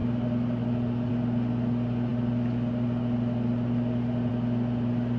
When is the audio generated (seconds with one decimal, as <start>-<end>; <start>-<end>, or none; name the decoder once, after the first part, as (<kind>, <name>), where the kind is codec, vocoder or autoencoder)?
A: 0.0-1.1 (vocoder, BigVGAN v2)